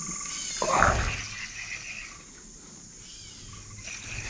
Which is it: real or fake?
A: real